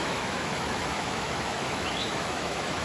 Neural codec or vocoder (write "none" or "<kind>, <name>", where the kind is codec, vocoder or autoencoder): autoencoder, DAC-VAE